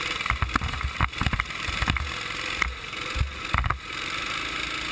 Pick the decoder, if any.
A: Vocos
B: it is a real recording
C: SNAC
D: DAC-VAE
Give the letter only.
B